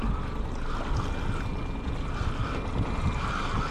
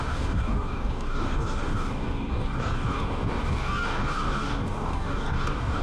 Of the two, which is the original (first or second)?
first